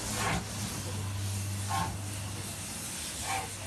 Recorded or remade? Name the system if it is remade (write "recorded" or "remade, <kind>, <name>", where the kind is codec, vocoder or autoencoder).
recorded